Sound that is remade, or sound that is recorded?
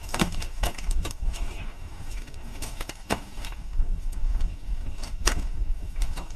remade